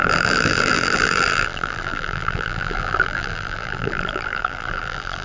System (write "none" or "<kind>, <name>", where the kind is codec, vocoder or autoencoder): vocoder, BigVGAN v2